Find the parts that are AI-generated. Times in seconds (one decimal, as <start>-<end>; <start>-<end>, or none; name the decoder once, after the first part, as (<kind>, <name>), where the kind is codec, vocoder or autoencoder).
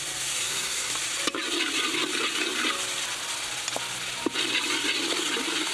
0.4-0.9 (codec, SNAC)